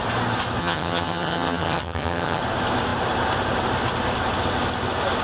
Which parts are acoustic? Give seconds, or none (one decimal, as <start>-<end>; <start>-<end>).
0.0-0.6; 2.4-5.2